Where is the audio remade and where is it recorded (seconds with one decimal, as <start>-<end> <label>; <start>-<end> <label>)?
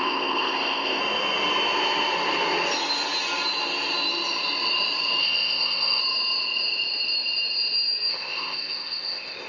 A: 0.0-1.0 remade; 1.0-5.2 recorded; 5.2-6.0 remade; 6.0-8.1 recorded; 8.1-9.5 remade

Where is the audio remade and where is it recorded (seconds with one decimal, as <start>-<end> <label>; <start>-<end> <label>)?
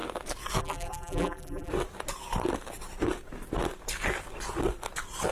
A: 0.0-0.6 recorded; 0.6-1.7 remade; 1.7-5.3 recorded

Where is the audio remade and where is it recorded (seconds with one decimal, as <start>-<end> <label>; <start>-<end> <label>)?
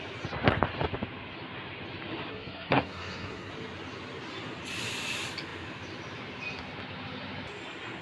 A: 0.0-2.3 recorded; 2.3-3.5 remade; 3.5-8.0 recorded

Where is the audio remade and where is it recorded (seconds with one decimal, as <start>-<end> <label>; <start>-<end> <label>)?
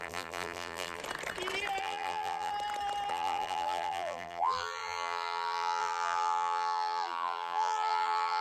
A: 0.0-1.0 remade; 1.0-1.8 recorded; 1.8-2.5 remade; 2.5-3.1 recorded; 3.1-8.4 remade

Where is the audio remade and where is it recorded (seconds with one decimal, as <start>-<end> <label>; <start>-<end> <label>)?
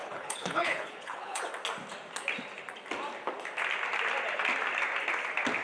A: 0.0-1.4 remade; 1.4-5.6 recorded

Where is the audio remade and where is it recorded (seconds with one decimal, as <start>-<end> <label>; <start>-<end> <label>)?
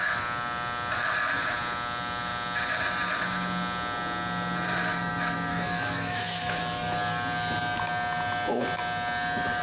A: 0.0-5.5 recorded; 5.5-6.6 remade; 6.6-9.6 recorded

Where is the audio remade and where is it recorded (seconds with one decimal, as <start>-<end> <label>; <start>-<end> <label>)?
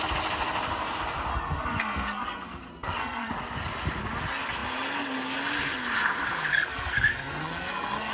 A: 0.0-1.3 recorded; 1.3-3.3 remade; 3.3-6.5 recorded; 6.5-8.1 remade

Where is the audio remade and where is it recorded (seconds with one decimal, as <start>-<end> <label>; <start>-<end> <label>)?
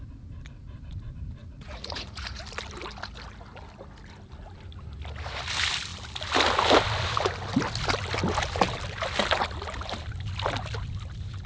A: 0.0-1.4 recorded; 1.4-2.4 remade; 2.4-11.5 recorded